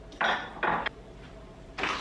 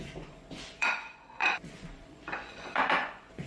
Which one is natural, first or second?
first